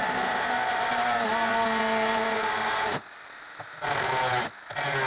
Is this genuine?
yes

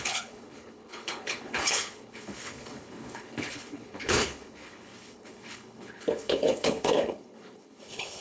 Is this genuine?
no